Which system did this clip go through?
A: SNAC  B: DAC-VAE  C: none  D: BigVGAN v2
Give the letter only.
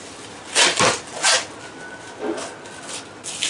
C